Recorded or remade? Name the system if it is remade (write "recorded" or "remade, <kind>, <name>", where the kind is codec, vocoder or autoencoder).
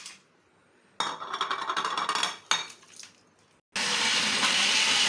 recorded